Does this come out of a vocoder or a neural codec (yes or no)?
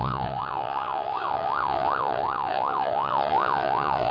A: yes